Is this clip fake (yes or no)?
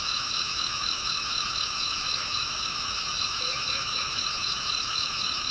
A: yes